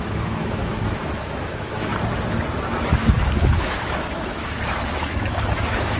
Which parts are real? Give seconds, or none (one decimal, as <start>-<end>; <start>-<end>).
1.9-3.0